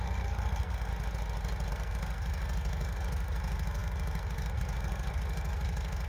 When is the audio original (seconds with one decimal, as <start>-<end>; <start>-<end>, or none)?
0.9-1.7

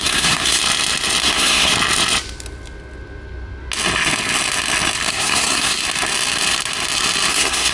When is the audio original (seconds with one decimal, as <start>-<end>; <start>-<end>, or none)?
0.6-1.2; 1.7-5.1; 5.8-7.3